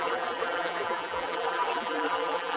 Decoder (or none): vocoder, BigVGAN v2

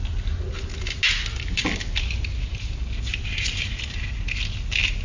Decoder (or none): none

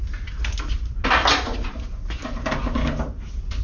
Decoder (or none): none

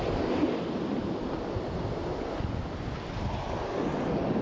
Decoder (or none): none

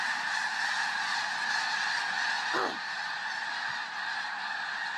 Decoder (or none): none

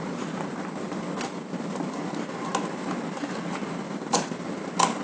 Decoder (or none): none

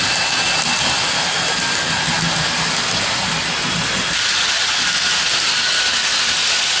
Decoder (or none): none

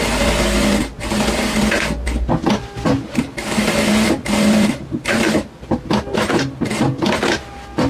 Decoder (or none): none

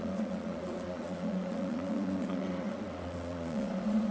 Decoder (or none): vocoder, Vocos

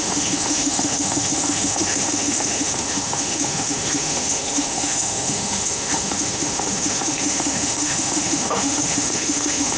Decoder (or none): autoencoder, DAC-VAE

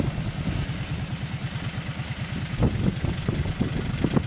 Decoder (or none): none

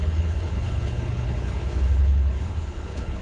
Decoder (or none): codec, HILCodec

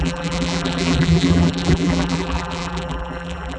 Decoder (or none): vocoder, BigVGAN v2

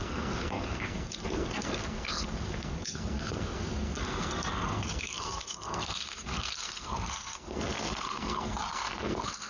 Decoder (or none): codec, SNAC